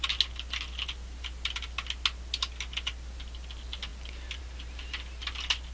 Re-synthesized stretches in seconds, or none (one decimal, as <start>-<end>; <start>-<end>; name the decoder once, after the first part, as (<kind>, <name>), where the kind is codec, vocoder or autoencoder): none